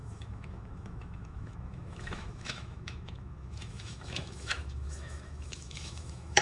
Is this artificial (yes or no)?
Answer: yes